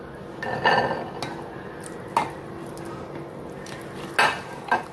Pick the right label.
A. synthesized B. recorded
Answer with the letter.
B